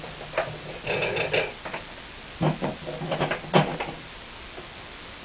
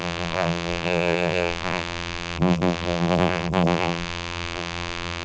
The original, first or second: first